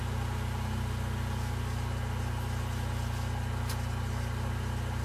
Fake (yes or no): no